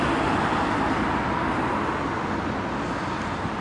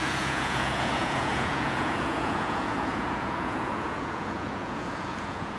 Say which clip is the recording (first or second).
first